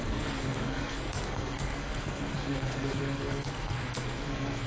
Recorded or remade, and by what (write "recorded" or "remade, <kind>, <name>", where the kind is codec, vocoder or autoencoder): remade, codec, SNAC